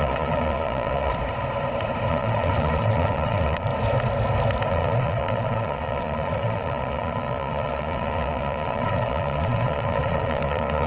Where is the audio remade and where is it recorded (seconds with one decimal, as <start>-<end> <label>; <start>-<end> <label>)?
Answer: 0.0-1.1 remade; 1.1-2.1 recorded; 2.1-3.7 remade; 3.7-4.7 recorded; 4.7-10.9 remade